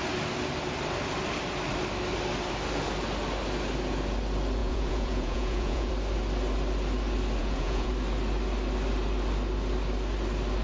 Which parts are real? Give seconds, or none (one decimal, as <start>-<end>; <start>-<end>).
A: 0.0-4.6; 5.9-7.4; 7.9-10.6